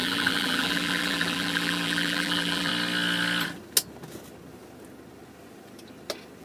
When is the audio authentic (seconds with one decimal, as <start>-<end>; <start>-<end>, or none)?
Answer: 2.7-6.4